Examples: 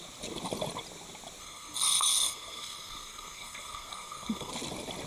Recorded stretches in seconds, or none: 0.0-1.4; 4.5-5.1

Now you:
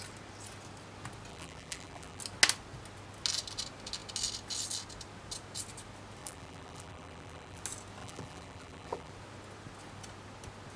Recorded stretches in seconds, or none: 0.0-1.3; 2.2-6.2; 7.6-8.0; 9.1-10.8

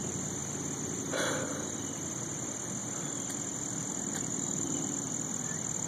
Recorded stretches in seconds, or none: 0.0-2.8; 5.1-5.9